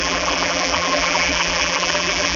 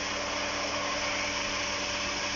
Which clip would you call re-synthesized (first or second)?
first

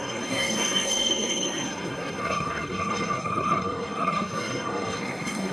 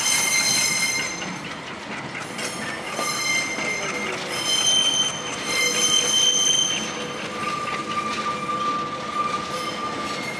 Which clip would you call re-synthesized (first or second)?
first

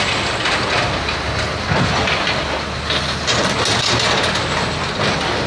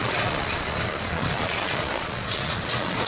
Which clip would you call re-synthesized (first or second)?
second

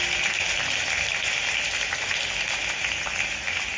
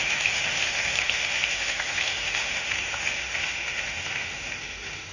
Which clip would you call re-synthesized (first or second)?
second